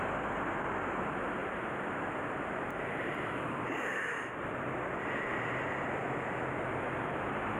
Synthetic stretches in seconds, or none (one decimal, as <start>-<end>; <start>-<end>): 1.4-6.0